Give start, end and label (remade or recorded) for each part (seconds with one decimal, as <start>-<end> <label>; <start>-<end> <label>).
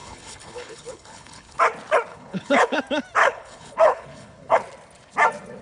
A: 0.0-1.6 remade; 1.6-2.1 recorded; 2.1-2.8 remade; 2.8-3.2 recorded; 3.2-4.6 remade; 4.6-5.6 recorded